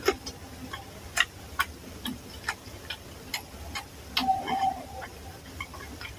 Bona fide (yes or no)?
yes